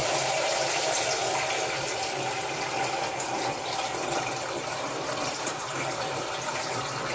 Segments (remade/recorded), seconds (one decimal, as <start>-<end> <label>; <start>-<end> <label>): 0.0-7.1 recorded